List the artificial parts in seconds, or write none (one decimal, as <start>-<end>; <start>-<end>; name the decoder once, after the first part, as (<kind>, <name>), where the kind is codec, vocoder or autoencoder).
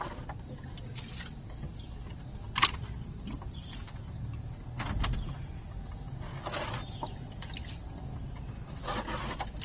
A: none